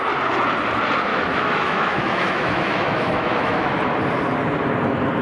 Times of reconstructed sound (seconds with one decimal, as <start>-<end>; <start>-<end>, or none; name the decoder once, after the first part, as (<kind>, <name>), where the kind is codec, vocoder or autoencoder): 1.1-3.7 (autoencoder, DAC-VAE)